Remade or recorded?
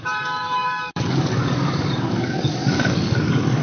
remade